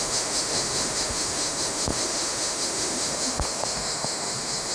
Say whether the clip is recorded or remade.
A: remade